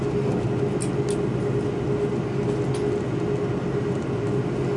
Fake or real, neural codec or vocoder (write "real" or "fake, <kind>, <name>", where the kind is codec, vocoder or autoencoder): real